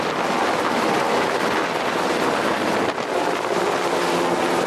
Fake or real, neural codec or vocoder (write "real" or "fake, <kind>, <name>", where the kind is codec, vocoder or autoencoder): real